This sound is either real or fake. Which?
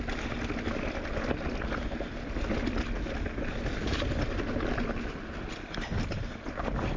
real